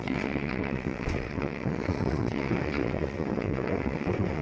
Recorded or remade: remade